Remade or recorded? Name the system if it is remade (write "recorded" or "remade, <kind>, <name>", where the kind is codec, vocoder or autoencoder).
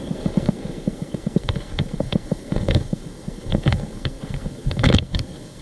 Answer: remade, codec, SNAC